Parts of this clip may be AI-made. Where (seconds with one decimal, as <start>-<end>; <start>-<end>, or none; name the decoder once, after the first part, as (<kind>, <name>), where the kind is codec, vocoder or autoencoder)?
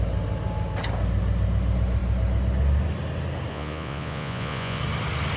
3.5-4.8 (vocoder, Vocos)